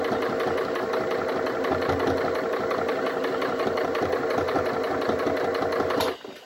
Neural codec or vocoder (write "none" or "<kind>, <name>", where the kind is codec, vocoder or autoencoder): none